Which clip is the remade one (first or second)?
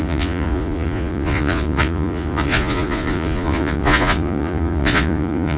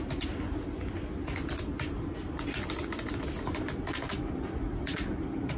first